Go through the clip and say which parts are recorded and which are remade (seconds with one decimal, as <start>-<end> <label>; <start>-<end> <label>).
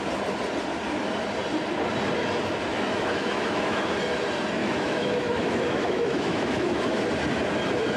0.0-2.7 recorded; 2.7-3.9 remade; 3.9-4.6 recorded; 4.6-7.0 remade; 7.0-8.0 recorded